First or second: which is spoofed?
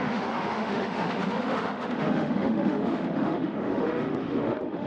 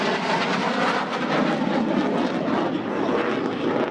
first